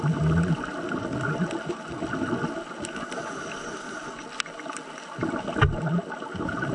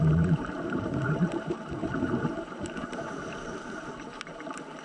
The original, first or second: first